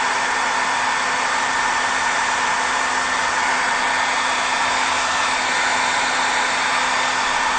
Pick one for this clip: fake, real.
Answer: real